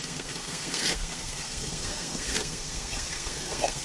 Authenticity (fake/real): fake